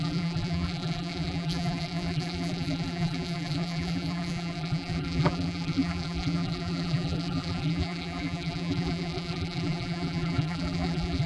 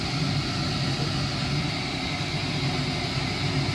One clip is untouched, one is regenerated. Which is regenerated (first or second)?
first